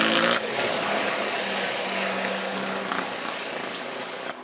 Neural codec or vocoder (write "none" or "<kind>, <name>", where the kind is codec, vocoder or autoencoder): codec, DAC